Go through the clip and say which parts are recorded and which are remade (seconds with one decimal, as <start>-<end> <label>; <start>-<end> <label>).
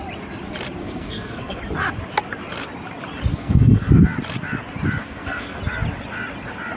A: 0.0-0.8 recorded; 0.8-1.6 remade; 1.6-3.3 recorded; 3.3-3.9 remade; 3.9-5.0 recorded; 5.0-5.6 remade; 5.6-6.8 recorded